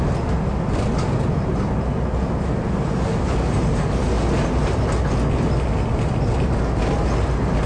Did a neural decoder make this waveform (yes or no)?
no